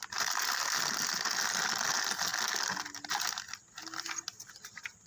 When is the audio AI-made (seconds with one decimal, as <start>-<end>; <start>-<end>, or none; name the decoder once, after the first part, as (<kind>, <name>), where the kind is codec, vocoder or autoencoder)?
none